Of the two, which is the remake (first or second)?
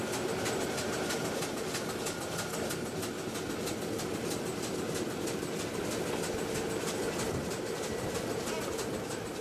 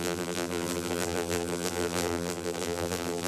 second